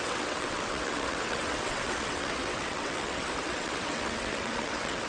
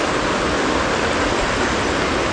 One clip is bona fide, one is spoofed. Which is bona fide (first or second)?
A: second